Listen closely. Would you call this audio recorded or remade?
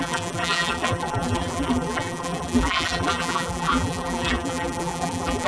remade